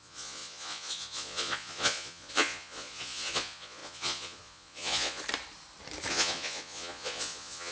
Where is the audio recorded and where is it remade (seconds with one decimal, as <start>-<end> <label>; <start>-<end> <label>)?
0.0-5.2 remade; 5.2-6.1 recorded; 6.1-7.7 remade